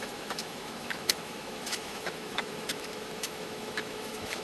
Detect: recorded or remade remade